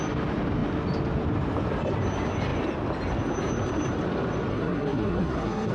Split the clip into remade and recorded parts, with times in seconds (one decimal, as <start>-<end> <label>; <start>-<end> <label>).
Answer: 0.0-4.5 recorded; 4.5-5.7 remade